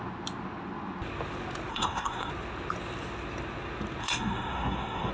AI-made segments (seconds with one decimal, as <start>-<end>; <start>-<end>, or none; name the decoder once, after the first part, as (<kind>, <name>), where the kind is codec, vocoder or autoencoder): 1.7-2.3 (codec, SNAC); 4.0-5.1